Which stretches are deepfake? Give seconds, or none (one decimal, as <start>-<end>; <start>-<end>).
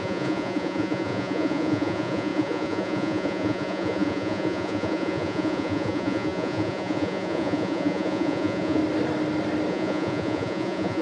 0.0-8.8; 9.7-11.0